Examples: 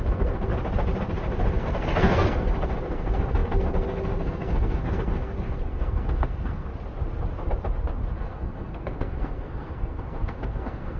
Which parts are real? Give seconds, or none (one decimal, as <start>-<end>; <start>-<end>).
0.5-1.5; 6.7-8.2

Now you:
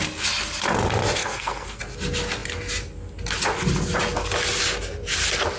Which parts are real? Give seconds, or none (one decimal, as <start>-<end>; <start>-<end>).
0.0-1.2; 1.8-5.6

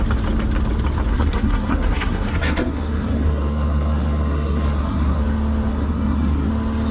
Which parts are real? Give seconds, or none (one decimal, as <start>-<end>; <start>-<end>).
0.0-1.1; 5.2-5.7; 6.5-6.9

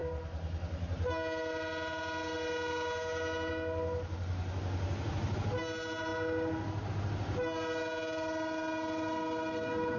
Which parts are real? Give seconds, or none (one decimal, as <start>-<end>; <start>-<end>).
0.0-10.0

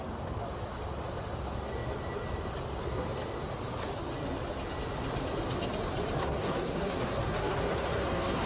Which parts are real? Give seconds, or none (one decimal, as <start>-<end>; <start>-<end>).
0.0-6.2

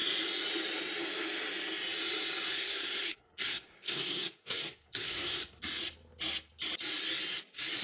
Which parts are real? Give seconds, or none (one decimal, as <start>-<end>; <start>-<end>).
0.0-2.5; 5.6-7.8